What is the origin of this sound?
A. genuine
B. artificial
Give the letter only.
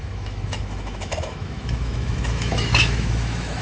B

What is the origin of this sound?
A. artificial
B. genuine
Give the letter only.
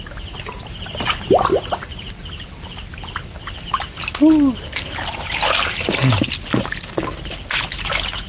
B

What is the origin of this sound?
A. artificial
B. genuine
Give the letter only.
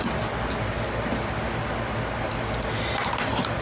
B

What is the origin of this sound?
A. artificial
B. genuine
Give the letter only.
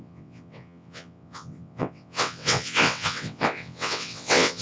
A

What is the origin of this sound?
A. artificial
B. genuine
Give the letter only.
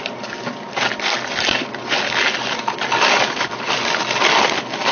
B